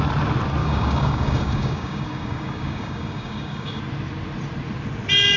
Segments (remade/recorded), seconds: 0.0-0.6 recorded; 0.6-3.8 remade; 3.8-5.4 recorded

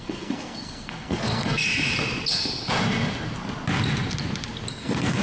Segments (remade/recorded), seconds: 0.0-1.6 remade; 1.6-4.7 recorded; 4.7-5.2 remade

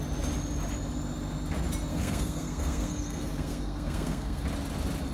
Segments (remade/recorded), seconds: 0.0-1.9 recorded; 1.9-4.4 remade; 4.4-5.1 recorded

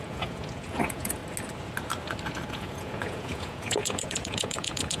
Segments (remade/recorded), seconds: 0.0-1.2 remade; 1.2-2.5 recorded; 2.5-5.0 remade